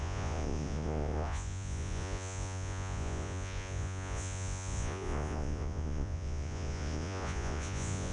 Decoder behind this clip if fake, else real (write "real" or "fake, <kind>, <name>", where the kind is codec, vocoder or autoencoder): fake, vocoder, Vocos